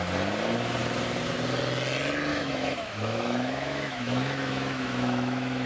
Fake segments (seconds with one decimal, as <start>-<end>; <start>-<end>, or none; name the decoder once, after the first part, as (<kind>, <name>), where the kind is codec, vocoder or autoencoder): 2.3-5.7 (autoencoder, DAC-VAE)